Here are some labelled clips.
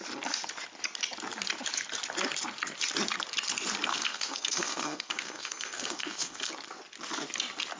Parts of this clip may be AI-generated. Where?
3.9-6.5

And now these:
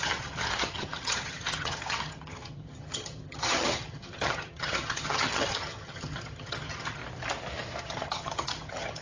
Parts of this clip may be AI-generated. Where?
0.0-7.0; 7.8-9.0